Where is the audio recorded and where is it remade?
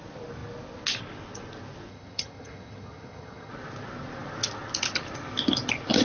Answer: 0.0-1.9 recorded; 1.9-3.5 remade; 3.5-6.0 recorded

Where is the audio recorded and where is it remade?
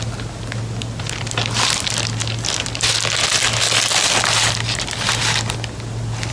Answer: 0.0-6.3 recorded